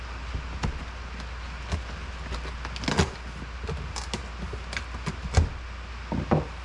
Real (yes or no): yes